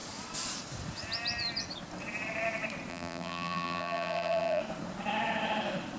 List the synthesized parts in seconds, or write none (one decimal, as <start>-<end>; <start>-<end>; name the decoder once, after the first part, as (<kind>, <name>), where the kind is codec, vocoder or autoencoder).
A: 2.9-4.6 (vocoder, BigVGAN v2)